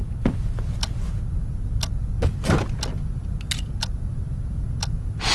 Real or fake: real